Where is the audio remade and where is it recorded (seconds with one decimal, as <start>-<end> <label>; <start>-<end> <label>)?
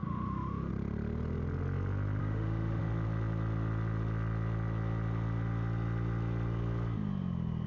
0.0-0.7 remade; 0.7-2.2 recorded; 2.2-2.8 remade; 2.8-7.7 recorded